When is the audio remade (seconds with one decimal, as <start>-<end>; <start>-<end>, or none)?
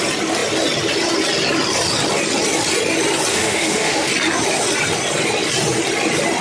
3.3-4.1